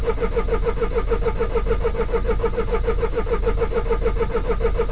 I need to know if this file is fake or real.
real